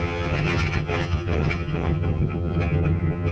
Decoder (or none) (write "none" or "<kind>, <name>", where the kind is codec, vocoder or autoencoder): vocoder, HiFi-GAN